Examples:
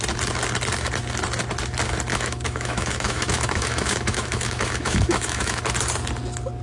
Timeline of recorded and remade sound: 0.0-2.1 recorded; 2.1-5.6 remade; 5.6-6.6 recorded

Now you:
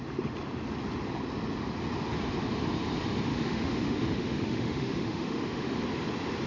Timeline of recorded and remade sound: 0.0-3.3 recorded; 3.3-5.8 remade; 5.8-6.5 recorded

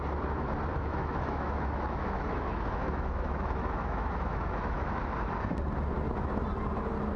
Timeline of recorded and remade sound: 0.0-0.7 recorded; 0.7-5.0 remade; 5.0-7.2 recorded

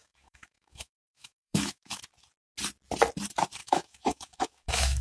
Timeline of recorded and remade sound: 0.0-2.0 remade; 2.0-3.6 recorded; 3.6-5.0 remade

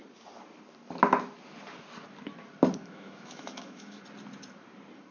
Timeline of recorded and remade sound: 0.0-2.8 recorded; 2.8-4.0 remade; 4.0-5.1 recorded

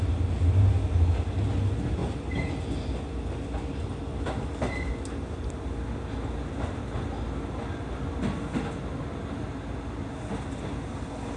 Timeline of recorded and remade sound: 0.0-11.4 recorded

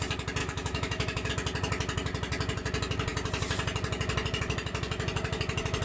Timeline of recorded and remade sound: 0.0-0.4 recorded; 0.4-1.3 remade; 1.3-5.8 recorded